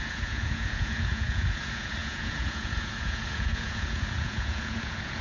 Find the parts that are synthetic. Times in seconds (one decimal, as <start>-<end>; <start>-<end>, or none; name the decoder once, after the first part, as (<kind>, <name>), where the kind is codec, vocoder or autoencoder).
0.0-5.2 (vocoder, Vocos)